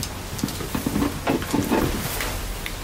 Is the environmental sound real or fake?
real